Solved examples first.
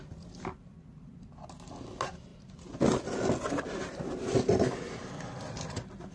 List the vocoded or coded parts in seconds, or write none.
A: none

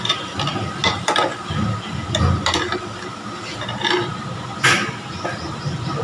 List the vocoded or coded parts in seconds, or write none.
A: none

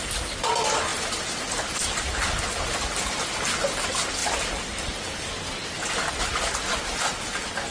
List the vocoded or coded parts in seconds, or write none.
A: none

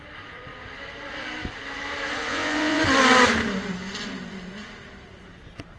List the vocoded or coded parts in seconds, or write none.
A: 2.3-2.8

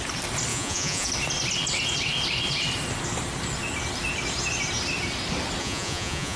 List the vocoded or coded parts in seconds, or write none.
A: 0.5-1.1; 5.6-6.4